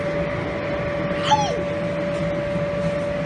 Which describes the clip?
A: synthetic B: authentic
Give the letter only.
B